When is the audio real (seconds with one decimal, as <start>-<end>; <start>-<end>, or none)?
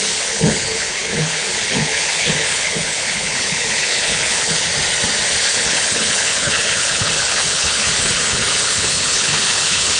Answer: 4.7-5.5